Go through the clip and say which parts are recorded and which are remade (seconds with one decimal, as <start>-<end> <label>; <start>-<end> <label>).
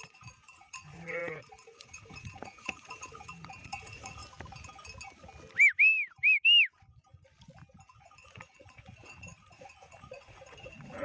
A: 0.0-4.2 remade; 4.2-8.0 recorded; 8.0-11.0 remade